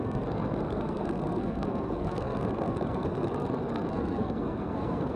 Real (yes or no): no